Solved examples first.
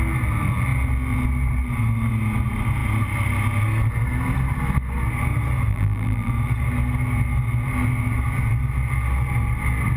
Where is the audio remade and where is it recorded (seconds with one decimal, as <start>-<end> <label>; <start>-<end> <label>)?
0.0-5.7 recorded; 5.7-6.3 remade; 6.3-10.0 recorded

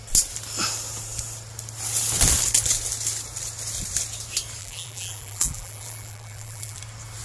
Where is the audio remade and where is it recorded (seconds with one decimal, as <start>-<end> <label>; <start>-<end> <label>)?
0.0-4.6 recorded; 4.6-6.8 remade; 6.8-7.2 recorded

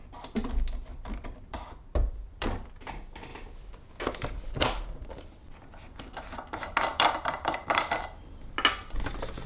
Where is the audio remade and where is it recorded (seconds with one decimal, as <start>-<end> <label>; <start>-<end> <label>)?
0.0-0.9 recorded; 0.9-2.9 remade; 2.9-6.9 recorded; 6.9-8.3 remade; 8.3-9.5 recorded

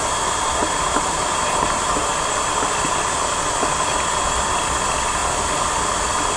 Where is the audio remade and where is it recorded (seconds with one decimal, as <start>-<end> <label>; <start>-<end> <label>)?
0.0-0.6 recorded; 0.6-2.3 remade; 2.3-6.4 recorded

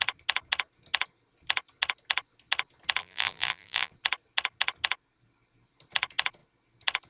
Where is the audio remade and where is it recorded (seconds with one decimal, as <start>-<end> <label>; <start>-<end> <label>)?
0.0-3.0 recorded; 3.0-3.9 remade; 3.9-7.1 recorded

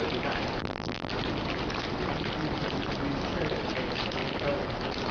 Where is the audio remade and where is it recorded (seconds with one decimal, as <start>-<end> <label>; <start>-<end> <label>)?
0.0-0.6 recorded; 0.6-1.1 remade; 1.1-5.1 recorded